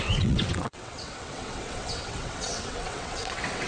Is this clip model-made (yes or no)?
yes